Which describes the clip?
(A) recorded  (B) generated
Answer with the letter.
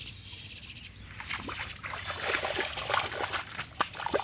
A